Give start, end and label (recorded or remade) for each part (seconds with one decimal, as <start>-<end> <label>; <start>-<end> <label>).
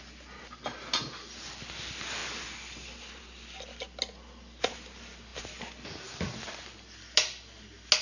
0.0-8.0 recorded